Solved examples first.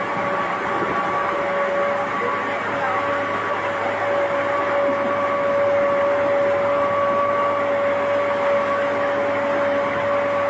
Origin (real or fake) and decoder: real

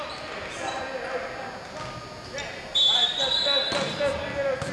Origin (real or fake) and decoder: real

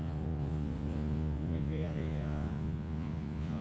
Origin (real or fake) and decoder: fake, vocoder, Vocos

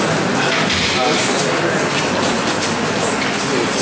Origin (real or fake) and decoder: real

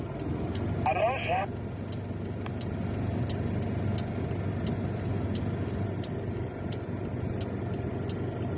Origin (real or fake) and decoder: real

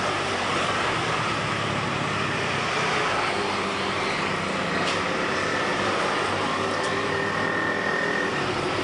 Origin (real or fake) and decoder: real